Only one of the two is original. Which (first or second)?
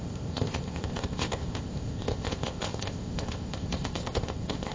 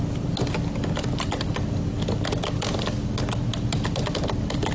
second